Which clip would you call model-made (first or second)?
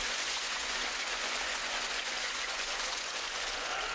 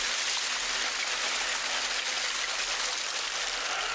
first